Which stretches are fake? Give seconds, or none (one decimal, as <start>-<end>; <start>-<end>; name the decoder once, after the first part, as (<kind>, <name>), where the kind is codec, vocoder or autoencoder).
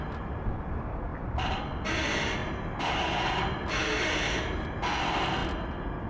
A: none